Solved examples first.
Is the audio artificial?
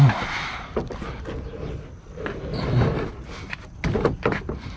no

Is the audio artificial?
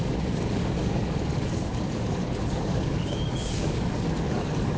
yes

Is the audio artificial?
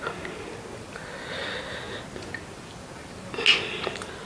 no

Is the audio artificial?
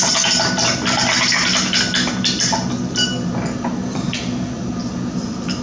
no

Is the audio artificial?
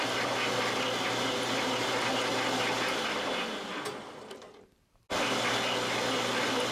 no